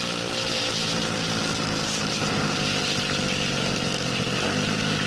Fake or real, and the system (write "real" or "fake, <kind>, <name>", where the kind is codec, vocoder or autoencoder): real